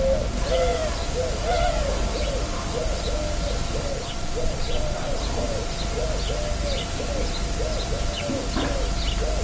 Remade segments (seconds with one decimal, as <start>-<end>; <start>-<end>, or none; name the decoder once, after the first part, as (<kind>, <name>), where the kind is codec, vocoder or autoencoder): 3.9-5.2 (vocoder, Vocos)